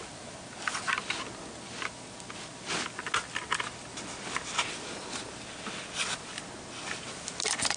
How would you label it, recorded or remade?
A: recorded